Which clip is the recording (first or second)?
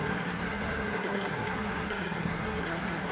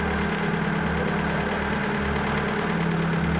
second